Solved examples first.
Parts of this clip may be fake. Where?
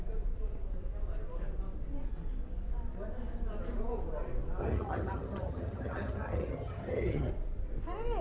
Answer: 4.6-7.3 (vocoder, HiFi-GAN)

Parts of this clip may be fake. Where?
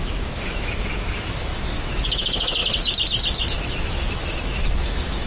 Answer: 0.0-2.6 (autoencoder, DAC-VAE); 3.5-5.3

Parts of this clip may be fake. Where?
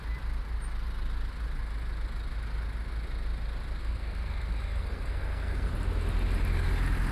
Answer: 3.8-5.7 (codec, SNAC)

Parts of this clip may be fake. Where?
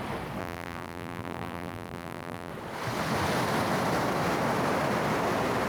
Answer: 0.4-2.5 (vocoder, BigVGAN v2)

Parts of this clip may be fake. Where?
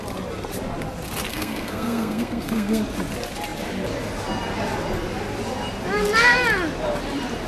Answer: 1.3-2.8 (codec, SNAC)